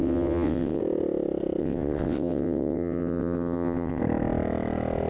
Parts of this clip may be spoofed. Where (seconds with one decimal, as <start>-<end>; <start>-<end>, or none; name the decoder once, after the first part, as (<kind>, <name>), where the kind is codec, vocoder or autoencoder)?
0.0-0.8 (vocoder, WaveNeXt); 1.6-4.0